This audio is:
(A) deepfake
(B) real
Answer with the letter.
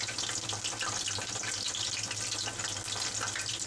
B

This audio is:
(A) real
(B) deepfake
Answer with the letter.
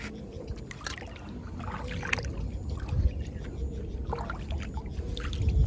A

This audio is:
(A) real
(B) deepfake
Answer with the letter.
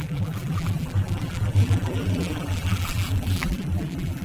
B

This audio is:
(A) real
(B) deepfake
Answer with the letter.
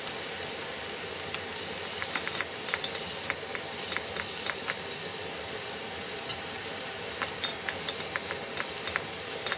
A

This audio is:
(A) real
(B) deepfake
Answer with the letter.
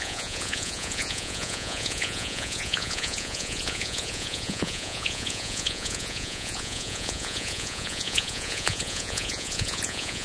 B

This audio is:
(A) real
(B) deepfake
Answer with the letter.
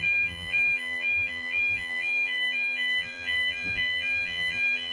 B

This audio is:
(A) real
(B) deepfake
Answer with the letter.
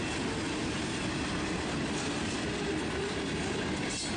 A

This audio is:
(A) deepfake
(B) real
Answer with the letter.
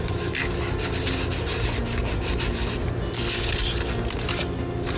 B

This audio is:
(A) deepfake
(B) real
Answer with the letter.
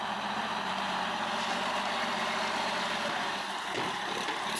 A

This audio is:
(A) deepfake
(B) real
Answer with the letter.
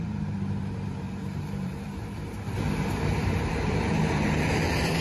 A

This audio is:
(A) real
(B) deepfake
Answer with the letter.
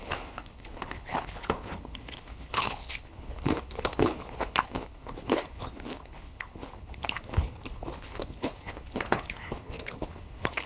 B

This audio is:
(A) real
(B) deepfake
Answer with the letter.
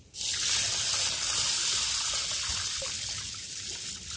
A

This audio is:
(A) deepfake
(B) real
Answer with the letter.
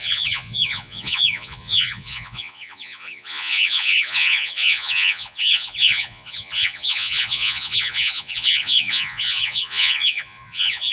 A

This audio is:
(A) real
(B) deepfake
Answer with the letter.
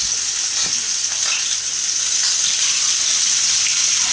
A